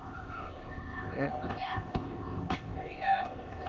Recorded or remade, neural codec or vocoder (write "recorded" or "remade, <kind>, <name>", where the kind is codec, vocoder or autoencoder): remade, codec, ZipCodec